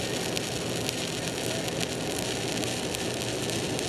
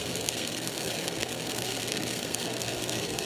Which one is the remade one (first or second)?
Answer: second